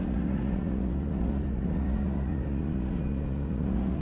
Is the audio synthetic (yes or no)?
yes